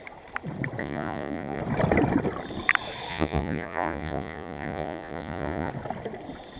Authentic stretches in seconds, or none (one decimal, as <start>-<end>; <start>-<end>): 0.0-0.8; 1.6-3.1; 5.7-6.6